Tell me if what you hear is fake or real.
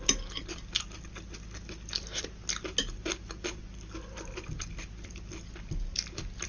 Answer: real